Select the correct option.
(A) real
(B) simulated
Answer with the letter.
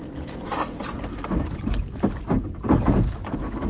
A